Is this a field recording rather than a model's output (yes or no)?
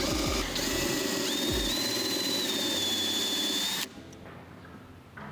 yes